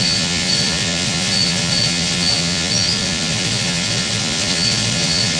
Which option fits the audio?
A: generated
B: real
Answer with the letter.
A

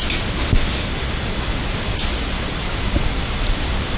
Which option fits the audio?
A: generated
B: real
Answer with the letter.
B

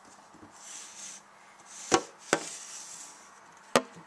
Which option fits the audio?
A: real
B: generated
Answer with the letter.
A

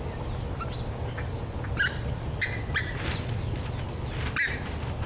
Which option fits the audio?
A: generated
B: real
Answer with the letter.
B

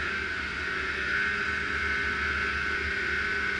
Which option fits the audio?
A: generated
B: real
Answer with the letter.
B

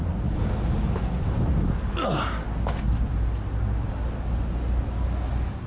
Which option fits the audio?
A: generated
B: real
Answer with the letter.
B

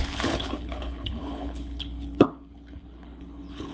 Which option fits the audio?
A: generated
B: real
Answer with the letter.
A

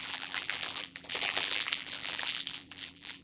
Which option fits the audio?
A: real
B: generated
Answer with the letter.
B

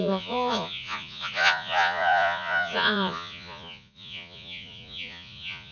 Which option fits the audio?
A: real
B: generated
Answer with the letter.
B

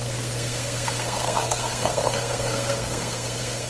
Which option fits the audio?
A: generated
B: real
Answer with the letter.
A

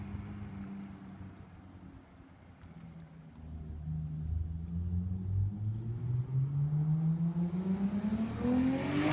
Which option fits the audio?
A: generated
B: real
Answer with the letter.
B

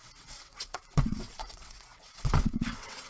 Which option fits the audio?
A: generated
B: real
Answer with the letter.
A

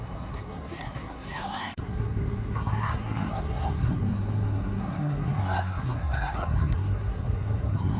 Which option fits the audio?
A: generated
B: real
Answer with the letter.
A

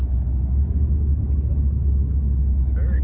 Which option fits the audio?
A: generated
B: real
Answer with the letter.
B